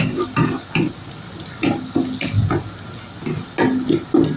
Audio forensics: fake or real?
real